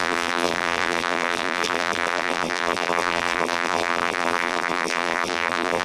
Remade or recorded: remade